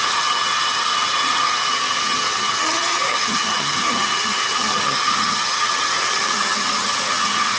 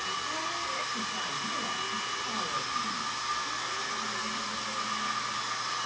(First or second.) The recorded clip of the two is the second